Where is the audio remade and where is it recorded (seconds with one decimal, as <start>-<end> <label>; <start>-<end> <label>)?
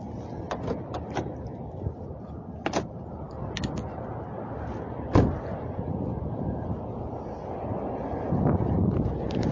0.0-9.5 recorded